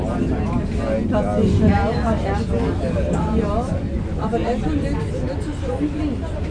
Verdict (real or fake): real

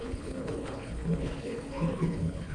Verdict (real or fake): fake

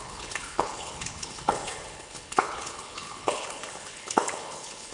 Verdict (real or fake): fake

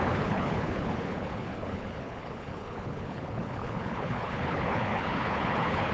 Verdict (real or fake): fake